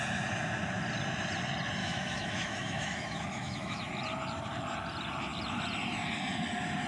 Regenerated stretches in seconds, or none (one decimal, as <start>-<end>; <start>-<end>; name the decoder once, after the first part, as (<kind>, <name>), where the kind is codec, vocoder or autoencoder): 1.8-3.9 (autoencoder, DAC-VAE)